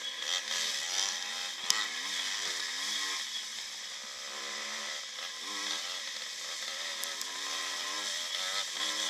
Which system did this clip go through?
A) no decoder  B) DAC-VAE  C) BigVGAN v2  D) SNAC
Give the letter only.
A